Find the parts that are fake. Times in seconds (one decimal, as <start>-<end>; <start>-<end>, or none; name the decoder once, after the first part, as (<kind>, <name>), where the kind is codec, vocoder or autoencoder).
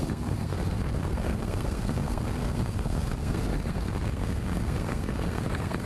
0.0-5.9 (codec, SNAC)